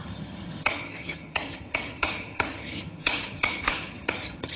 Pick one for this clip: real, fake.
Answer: fake